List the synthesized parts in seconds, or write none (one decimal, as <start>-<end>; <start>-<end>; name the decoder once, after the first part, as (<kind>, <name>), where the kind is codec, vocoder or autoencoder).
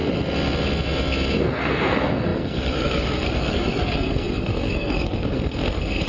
1.4-6.1 (codec, SNAC)